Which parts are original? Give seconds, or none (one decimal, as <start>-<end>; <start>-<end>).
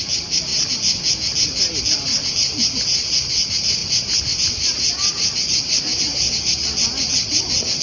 0.0-7.8